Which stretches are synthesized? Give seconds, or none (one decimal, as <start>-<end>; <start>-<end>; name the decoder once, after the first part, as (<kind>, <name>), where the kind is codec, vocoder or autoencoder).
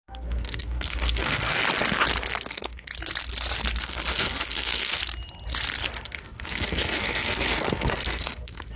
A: 0.0-1.6 (codec, SNAC); 2.5-2.9; 3.8-5.0; 6.0-8.8